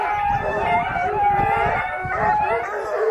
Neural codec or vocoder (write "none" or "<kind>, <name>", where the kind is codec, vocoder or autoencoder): none